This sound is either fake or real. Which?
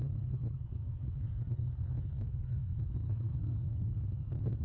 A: fake